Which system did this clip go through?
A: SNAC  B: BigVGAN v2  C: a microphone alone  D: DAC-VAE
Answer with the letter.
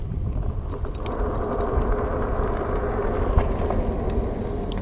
C